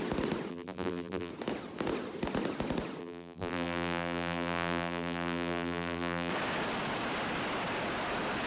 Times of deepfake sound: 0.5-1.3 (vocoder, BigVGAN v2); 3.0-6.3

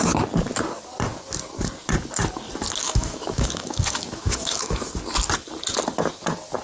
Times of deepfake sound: 2.8-4.8 (autoencoder, DAC-VAE)

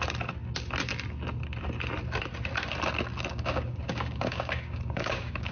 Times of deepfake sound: 3.3-5.5 (codec, DAC)